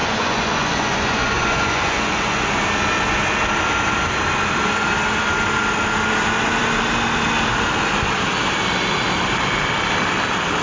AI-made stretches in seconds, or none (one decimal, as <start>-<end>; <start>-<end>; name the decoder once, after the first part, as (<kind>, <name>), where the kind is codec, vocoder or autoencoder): 0.0-2.6 (vocoder, Vocos)